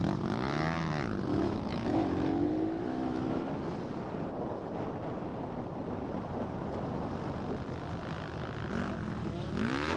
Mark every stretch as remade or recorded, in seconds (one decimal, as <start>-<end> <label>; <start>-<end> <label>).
0.0-1.3 recorded; 1.3-3.4 remade; 3.4-9.2 recorded; 9.2-10.0 remade